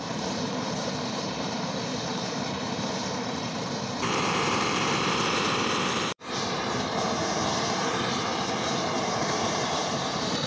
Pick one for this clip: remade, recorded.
remade